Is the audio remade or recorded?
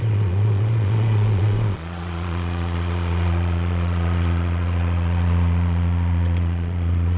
remade